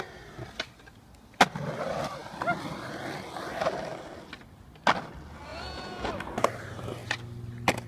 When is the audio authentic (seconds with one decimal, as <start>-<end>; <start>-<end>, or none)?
0.0-5.5; 6.1-7.9